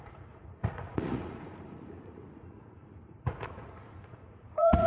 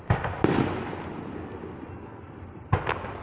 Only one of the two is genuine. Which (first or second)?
second